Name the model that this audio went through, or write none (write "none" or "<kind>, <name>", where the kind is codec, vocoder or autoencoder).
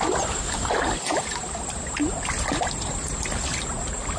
none